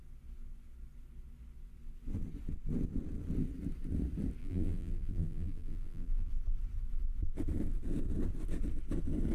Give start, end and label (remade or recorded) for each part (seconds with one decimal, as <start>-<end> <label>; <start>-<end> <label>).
0.0-4.4 recorded; 4.4-6.3 remade; 6.3-9.3 recorded

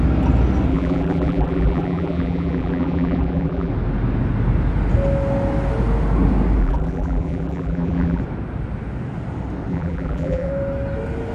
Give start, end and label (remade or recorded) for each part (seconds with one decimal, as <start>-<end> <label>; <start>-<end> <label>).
0.0-0.7 recorded; 0.7-3.7 remade; 3.7-6.6 recorded; 6.6-8.2 remade; 8.2-9.7 recorded; 9.7-10.5 remade; 10.5-11.3 recorded